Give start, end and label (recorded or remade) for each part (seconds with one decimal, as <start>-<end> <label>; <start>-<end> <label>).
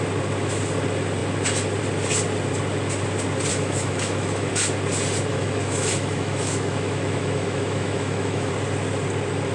0.0-3.5 recorded; 3.5-4.5 remade; 4.5-5.3 recorded; 5.3-8.5 remade; 8.5-9.5 recorded